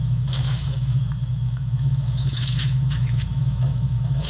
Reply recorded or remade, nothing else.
remade